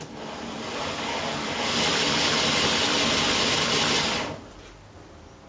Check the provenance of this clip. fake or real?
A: fake